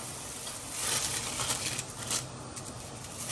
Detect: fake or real real